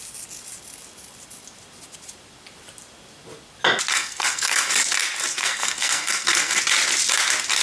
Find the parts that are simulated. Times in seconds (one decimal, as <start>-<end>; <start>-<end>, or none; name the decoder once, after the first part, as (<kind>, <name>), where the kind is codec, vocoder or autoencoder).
3.9-4.7 (codec, SNAC); 5.3-6.6